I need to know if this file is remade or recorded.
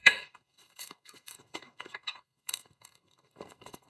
remade